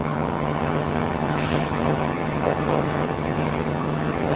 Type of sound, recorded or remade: remade